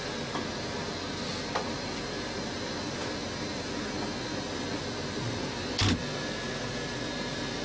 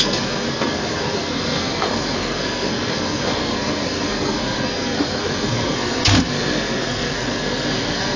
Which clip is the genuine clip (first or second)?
first